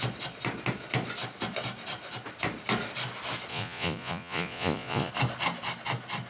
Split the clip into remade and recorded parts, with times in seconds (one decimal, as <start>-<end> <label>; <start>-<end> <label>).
0.0-3.5 recorded; 3.5-5.1 remade; 5.1-6.3 recorded